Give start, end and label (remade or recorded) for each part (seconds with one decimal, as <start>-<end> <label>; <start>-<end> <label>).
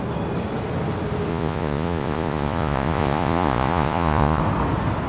0.0-1.3 recorded; 1.3-4.4 remade; 4.4-5.1 recorded